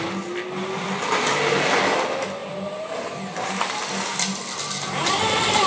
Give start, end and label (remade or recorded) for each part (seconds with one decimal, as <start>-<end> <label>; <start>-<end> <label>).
0.0-5.7 recorded